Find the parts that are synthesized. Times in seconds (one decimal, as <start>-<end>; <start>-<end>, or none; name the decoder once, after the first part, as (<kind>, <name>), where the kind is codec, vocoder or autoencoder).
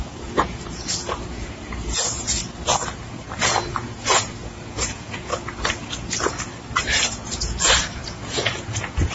0.0-2.4 (vocoder, Vocos); 3.7-5.3; 7.1-9.1